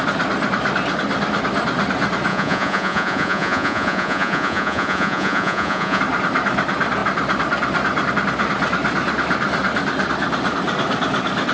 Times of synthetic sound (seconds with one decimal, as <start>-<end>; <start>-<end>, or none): 2.3-6.0